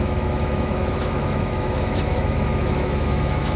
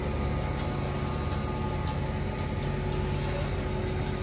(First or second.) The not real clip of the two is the first